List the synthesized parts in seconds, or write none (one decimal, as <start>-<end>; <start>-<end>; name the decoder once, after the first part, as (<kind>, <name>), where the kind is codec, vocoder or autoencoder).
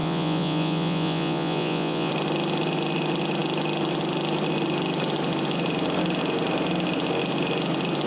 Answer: 0.0-2.1 (vocoder, Vocos)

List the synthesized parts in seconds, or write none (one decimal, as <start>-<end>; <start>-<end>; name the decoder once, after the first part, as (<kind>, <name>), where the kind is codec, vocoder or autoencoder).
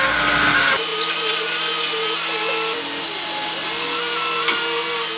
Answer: none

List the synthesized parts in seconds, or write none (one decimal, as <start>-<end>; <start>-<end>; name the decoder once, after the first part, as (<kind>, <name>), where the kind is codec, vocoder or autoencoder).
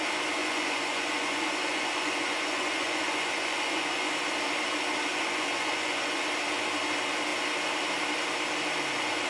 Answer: 0.4-4.1 (vocoder, Vocos); 5.1-6.2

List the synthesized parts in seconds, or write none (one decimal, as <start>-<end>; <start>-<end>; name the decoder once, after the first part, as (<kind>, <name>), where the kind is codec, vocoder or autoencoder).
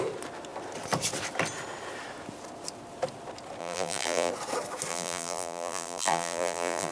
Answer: 3.6-4.3 (vocoder, BigVGAN v2); 4.9-6.9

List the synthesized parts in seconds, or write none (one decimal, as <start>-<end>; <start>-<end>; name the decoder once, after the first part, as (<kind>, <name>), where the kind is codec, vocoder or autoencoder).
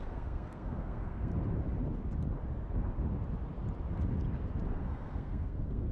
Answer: 0.0-1.3 (codec, SNAC); 4.8-5.9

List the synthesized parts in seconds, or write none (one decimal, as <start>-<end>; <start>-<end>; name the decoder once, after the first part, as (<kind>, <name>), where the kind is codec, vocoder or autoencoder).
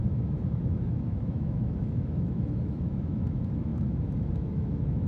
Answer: 0.0-5.1 (autoencoder, DAC-VAE)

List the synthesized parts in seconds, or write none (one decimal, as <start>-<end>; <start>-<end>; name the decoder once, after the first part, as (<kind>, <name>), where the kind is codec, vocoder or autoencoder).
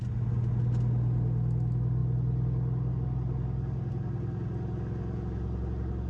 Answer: none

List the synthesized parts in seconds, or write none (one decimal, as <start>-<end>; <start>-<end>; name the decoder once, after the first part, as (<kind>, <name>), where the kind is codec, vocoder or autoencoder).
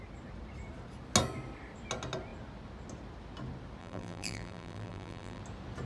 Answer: 3.8-5.4 (vocoder, BigVGAN v2)